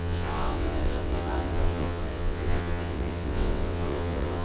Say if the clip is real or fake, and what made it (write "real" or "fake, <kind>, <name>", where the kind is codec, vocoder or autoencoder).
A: fake, vocoder, WaveNeXt